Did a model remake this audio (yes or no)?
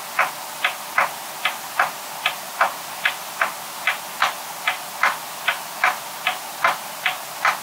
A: no